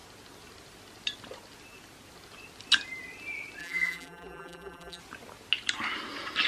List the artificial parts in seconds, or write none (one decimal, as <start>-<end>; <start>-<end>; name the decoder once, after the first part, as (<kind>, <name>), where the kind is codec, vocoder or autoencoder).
3.6-5.0 (vocoder, BigVGAN v2)